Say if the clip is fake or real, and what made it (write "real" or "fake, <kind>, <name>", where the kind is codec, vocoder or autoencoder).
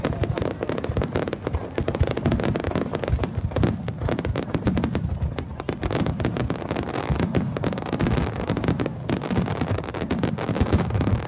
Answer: real